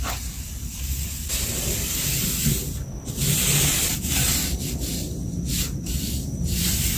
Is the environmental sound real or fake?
real